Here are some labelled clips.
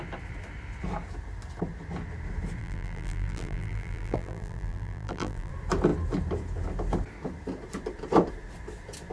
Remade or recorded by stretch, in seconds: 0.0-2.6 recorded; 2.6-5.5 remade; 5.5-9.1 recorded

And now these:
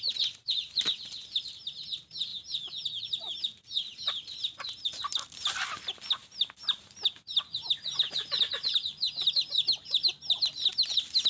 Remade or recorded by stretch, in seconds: 0.0-11.3 recorded

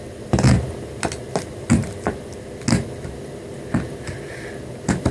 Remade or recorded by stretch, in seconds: 0.0-5.1 recorded

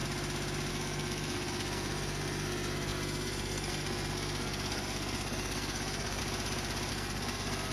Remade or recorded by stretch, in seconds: 0.0-0.7 recorded; 0.7-6.2 remade; 6.2-6.9 recorded; 6.9-7.7 remade

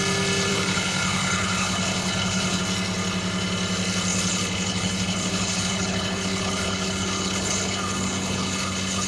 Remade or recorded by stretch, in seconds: 0.0-0.5 recorded; 0.5-2.6 remade; 2.6-4.1 recorded; 4.1-9.1 remade

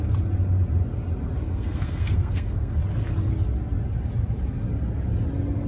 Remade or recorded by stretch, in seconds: 0.0-1.5 recorded; 1.5-2.8 remade; 2.8-5.7 recorded

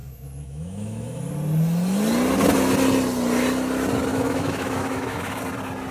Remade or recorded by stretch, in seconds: 0.0-1.2 remade; 1.2-4.1 recorded; 4.1-5.4 remade; 5.4-5.9 recorded